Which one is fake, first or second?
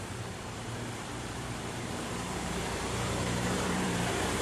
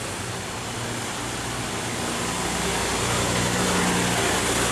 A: first